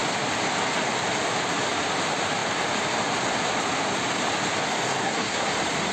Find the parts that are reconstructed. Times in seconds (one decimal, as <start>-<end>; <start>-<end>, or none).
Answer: 5.0-5.5